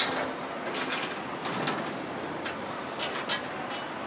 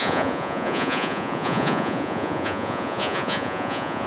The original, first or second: first